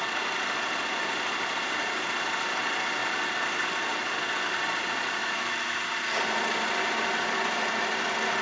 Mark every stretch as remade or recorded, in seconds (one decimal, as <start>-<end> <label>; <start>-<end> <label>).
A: 0.0-5.2 recorded; 5.2-5.8 remade; 5.8-8.4 recorded